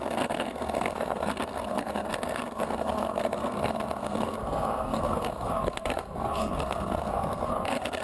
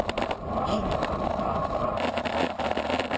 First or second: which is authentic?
second